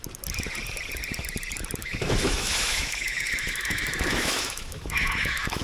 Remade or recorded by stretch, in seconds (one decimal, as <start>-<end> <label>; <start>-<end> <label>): 0.0-1.8 recorded; 1.8-5.6 remade